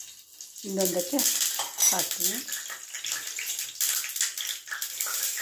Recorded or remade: recorded